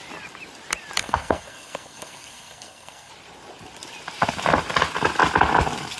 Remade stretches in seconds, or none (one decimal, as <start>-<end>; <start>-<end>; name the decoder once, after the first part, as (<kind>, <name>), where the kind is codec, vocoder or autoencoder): 1.0-3.1 (codec, SNAC)